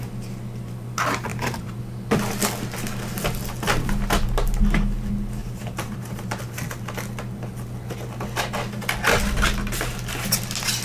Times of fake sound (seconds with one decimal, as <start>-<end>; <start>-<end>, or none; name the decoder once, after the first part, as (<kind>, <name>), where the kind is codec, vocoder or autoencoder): 1.3-1.8 (vocoder, BigVGAN v2); 5.4-6.4